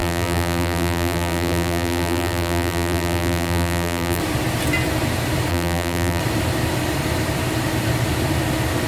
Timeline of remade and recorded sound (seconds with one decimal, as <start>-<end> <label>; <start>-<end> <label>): 0.0-4.2 remade; 4.2-5.5 recorded; 5.5-6.2 remade; 6.2-8.9 recorded